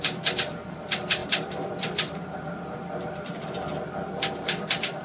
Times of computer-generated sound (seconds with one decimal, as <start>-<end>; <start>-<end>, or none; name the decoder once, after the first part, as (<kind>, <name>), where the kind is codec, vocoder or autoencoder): none